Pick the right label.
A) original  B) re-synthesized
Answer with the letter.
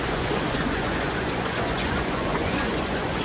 B